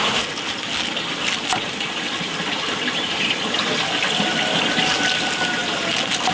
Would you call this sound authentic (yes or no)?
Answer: yes